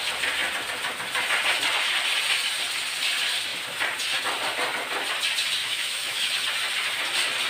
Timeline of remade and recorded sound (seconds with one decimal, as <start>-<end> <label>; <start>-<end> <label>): 0.0-5.6 recorded; 5.6-6.3 remade; 6.3-7.5 recorded